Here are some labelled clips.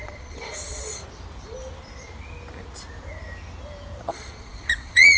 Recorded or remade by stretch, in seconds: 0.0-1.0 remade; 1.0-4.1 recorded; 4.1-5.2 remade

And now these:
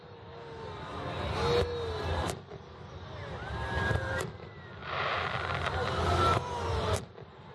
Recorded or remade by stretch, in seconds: 0.0-7.5 recorded

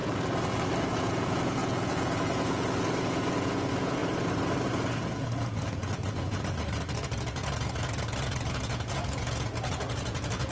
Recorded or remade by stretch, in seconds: 0.0-0.9 recorded; 0.9-4.0 remade; 4.0-5.1 recorded; 5.1-10.5 remade